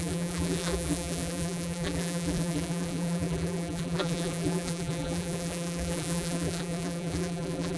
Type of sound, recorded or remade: remade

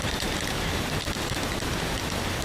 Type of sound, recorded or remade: remade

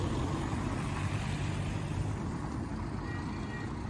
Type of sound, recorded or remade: remade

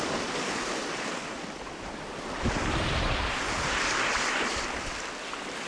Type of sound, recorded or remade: recorded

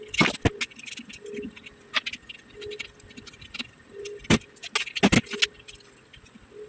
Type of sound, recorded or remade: recorded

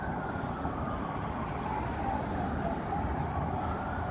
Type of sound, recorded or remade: recorded